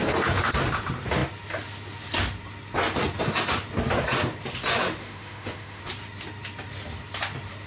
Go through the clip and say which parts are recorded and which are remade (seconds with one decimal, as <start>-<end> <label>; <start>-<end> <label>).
0.0-5.0 recorded; 5.0-5.8 remade; 5.8-7.7 recorded